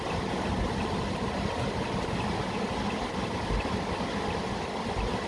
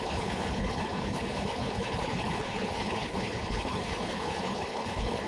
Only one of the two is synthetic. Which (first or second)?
second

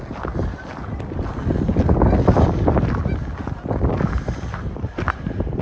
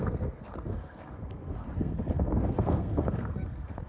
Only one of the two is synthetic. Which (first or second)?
second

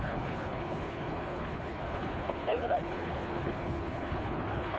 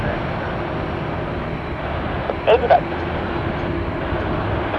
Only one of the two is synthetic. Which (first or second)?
first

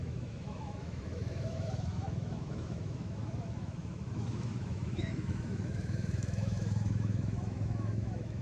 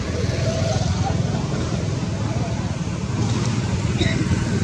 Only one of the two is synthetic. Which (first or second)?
first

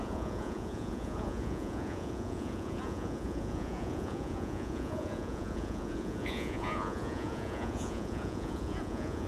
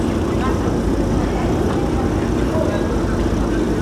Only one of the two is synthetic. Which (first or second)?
first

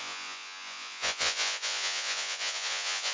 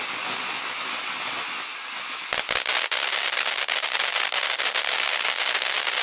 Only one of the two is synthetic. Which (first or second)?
first